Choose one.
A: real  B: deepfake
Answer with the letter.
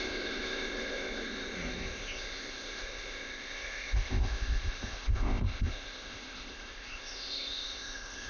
B